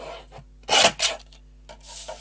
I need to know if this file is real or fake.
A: real